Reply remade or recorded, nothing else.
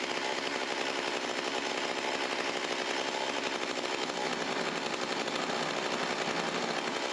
recorded